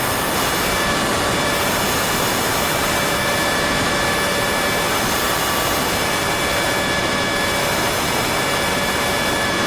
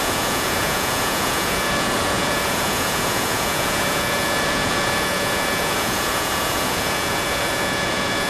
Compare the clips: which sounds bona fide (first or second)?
first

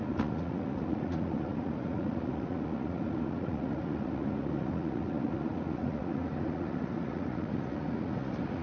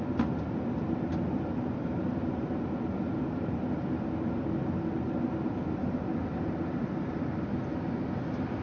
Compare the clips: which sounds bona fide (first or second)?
second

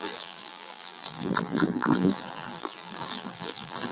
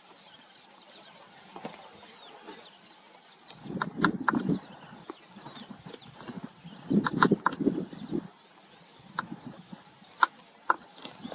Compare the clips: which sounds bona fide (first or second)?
second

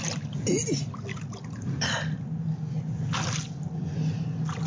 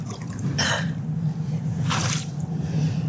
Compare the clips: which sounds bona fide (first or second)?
first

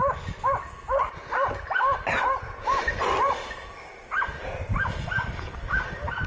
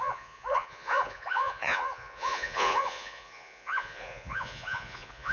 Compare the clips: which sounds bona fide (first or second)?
first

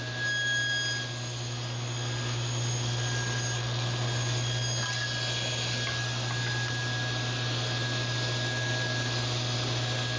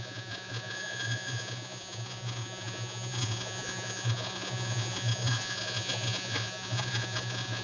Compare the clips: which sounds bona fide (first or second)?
first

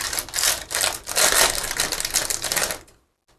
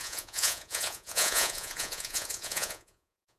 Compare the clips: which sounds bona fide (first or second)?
first